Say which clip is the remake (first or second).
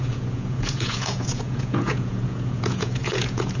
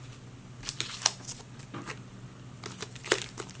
first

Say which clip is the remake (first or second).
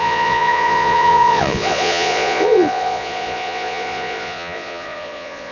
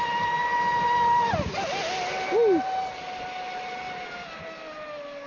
first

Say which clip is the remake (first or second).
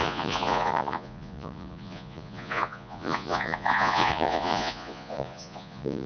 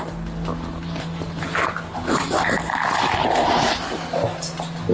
first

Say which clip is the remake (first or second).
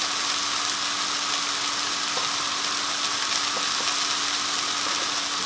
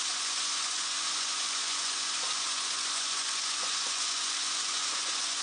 second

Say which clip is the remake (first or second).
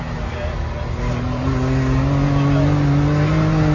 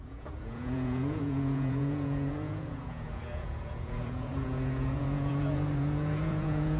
second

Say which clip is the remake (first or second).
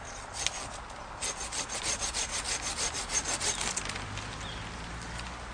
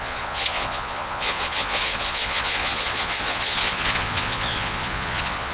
second